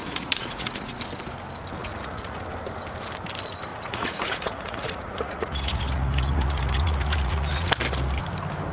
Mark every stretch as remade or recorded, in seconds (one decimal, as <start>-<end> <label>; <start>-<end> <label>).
0.0-1.0 remade; 1.0-1.8 recorded; 1.8-2.4 remade; 2.4-3.7 recorded; 3.7-7.7 remade; 7.7-8.7 recorded